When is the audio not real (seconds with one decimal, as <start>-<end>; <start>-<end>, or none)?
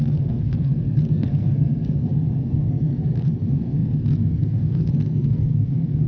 0.0-6.1